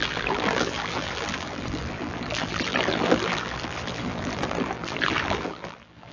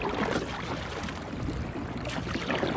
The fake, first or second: first